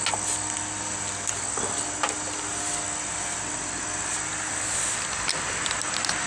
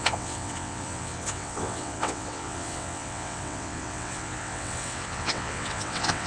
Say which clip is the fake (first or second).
second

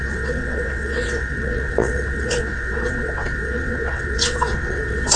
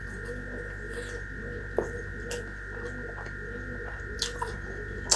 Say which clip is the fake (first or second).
first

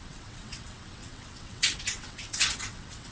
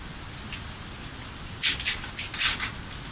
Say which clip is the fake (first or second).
first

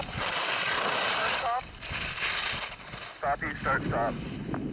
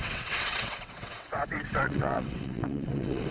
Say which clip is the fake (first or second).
second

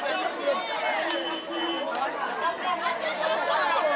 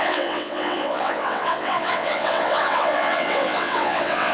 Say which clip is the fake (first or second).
second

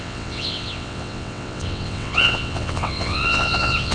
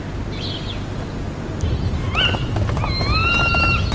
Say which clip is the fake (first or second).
first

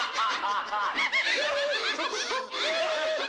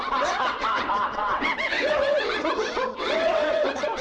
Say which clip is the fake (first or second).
second